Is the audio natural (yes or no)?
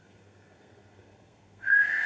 no